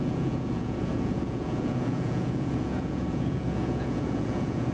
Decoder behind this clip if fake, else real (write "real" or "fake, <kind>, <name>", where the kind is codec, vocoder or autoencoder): fake, vocoder, Vocos